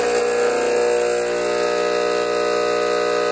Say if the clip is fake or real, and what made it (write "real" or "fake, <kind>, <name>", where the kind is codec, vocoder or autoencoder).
real